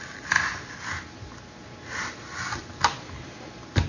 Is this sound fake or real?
real